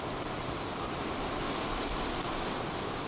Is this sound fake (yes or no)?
no